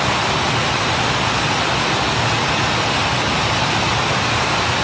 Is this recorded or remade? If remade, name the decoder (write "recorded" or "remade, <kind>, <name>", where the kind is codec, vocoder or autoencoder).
recorded